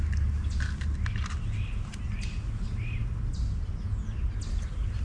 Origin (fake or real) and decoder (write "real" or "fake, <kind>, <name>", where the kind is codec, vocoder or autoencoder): real